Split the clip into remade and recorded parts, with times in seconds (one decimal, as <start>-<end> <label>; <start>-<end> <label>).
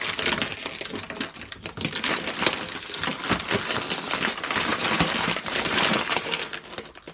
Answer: 0.0-4.7 recorded; 4.7-6.3 remade; 6.3-7.1 recorded